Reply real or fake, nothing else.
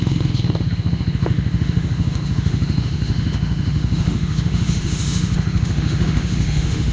fake